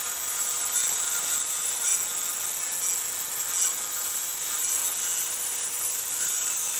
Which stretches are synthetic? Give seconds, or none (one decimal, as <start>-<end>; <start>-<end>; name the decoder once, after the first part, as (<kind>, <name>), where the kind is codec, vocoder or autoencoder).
0.0-1.9 (vocoder, BigVGAN v2); 3.7-4.8; 5.8-6.8